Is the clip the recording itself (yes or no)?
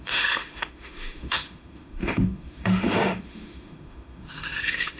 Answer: no